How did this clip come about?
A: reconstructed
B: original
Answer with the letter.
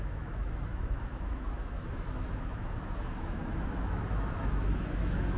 A